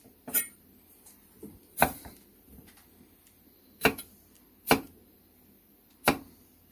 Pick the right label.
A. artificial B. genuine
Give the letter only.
A